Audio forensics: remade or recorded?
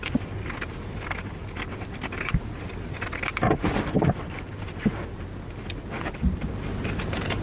recorded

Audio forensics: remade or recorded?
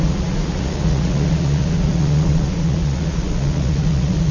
remade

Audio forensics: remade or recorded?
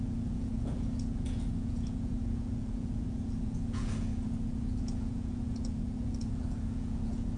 remade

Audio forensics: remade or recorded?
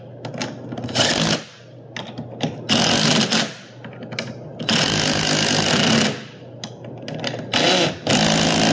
recorded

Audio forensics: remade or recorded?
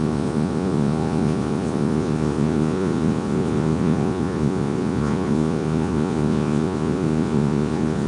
remade